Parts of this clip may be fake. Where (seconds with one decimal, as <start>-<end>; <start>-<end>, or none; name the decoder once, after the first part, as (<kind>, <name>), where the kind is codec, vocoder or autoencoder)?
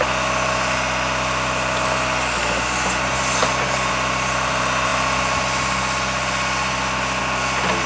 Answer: none